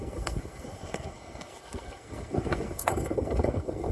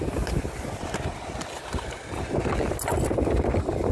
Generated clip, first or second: first